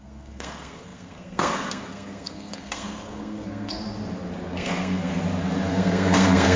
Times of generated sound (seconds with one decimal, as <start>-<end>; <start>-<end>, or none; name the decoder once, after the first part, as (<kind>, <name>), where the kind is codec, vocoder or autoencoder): 0.0-3.8 (codec, SNAC); 4.5-5.1; 5.7-6.6

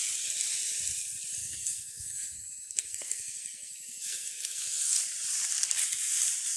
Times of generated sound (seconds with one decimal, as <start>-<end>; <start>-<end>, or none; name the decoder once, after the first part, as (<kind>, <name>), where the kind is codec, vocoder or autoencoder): 1.4-5.0 (codec, SNAC)

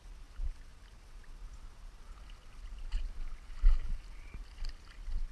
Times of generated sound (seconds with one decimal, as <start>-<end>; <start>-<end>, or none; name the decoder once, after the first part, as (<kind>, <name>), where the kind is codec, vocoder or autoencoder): none

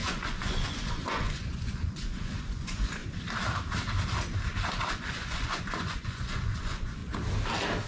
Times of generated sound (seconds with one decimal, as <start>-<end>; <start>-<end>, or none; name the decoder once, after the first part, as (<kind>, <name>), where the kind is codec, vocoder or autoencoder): 0.0-3.0 (vocoder, Vocos); 5.0-7.0

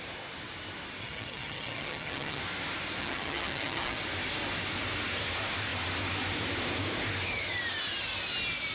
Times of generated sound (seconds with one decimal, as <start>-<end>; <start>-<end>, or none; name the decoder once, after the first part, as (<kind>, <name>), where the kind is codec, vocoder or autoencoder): 1.0-2.4 (vocoder, HiFi-GAN); 3.0-4.0

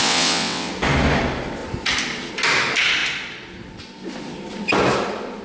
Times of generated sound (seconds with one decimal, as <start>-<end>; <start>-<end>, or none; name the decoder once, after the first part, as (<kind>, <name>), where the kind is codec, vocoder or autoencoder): 0.0-0.7 (vocoder, WaveNeXt)